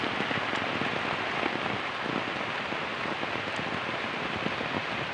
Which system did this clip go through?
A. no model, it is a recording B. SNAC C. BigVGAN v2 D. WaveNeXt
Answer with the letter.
A